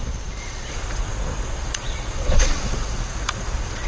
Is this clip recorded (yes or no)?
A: no